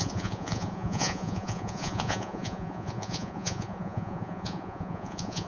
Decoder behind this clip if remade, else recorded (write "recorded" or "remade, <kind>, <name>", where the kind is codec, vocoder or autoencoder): remade, vocoder, Vocos